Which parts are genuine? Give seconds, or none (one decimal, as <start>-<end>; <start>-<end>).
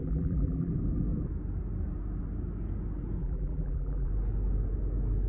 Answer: 0.7-3.2; 4.1-5.3